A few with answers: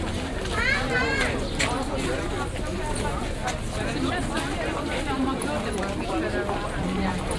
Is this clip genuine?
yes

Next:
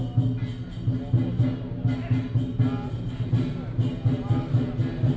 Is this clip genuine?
yes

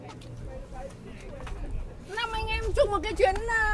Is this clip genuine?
no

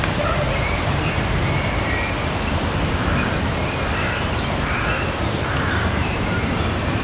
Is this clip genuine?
no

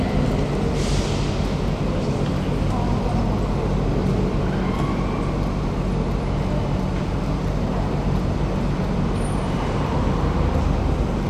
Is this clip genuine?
yes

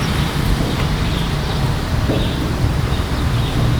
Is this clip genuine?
no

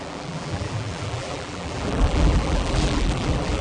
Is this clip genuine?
no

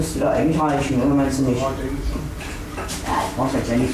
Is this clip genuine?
yes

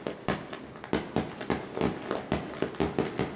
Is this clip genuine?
yes